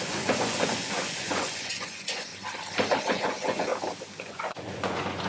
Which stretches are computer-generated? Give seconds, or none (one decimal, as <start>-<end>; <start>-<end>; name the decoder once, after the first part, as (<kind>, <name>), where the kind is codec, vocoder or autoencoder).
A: 0.0-2.3 (vocoder, Vocos); 3.0-3.7; 4.2-5.3